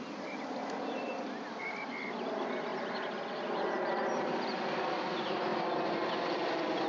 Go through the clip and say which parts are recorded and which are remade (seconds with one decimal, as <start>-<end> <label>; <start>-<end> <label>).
0.0-6.9 recorded